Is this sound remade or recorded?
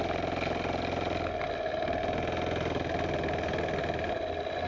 recorded